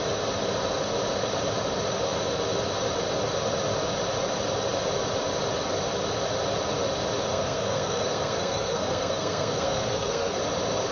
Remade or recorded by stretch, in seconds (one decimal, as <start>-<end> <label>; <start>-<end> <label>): 0.0-7.3 recorded; 7.3-10.4 remade; 10.4-10.9 recorded